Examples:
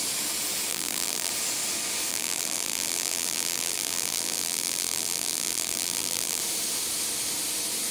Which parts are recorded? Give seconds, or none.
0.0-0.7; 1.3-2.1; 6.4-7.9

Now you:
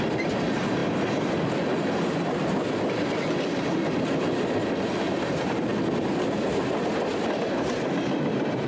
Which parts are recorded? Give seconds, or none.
0.0-0.8; 1.4-8.7